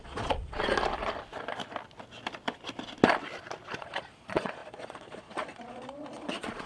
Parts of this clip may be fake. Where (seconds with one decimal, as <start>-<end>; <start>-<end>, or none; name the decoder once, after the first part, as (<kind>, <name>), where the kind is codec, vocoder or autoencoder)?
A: 0.0-0.7 (vocoder, Vocos); 3.8-6.7